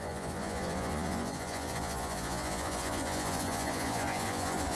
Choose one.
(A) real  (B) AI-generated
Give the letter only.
B